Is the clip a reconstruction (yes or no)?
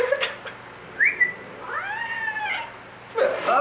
no